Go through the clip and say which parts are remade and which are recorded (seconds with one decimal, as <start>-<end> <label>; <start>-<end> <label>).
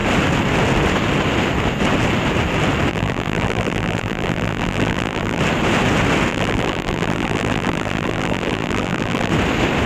0.0-2.9 recorded; 2.9-5.4 remade; 5.4-6.3 recorded; 6.3-9.3 remade; 9.3-9.9 recorded